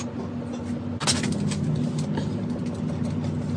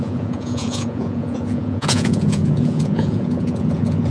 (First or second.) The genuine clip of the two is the first